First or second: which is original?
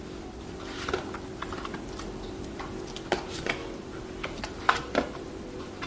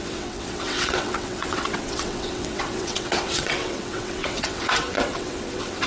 first